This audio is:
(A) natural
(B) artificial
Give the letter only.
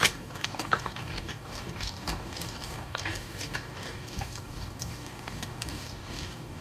B